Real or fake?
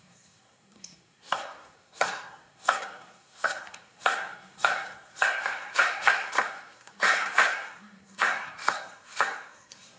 fake